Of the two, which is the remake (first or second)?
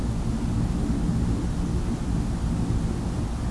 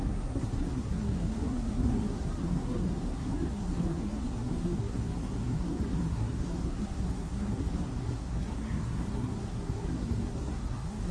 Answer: second